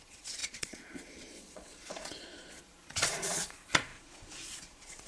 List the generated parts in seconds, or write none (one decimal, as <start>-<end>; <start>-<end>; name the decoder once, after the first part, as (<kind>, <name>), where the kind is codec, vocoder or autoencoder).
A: 0.0-5.1 (vocoder, Vocos)